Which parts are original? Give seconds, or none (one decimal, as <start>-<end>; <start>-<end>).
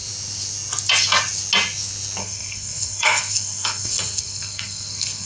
0.0-2.2